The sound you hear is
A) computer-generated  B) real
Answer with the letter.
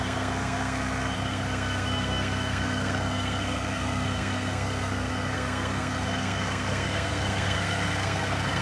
A